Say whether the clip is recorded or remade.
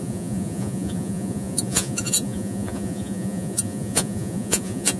remade